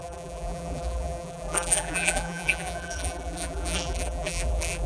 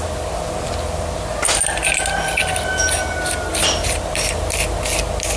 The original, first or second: second